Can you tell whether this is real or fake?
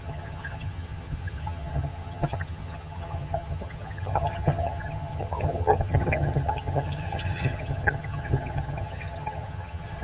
fake